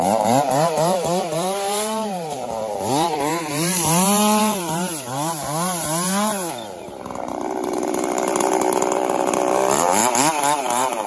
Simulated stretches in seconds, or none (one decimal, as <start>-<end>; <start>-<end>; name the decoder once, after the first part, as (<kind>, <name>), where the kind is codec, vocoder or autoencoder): 0.0-10.0 (vocoder, BigVGAN v2); 10.6-11.1